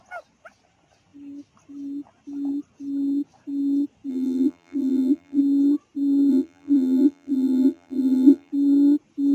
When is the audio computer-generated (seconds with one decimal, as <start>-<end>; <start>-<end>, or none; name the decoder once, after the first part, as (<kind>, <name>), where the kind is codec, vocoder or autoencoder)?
4.1-5.4 (vocoder, BigVGAN v2); 6.3-8.5